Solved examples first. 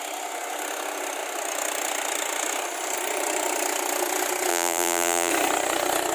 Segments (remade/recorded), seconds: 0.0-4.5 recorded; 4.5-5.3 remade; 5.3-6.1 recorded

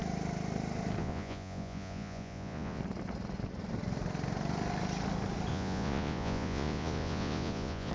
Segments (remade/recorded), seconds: 0.0-1.0 recorded; 1.0-2.8 remade; 2.8-5.5 recorded; 5.5-7.9 remade

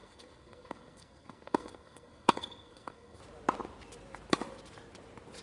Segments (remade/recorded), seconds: 0.0-3.2 remade; 3.2-5.4 recorded